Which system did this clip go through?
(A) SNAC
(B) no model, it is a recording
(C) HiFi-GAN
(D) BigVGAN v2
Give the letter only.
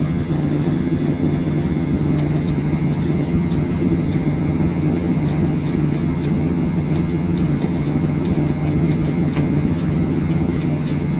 C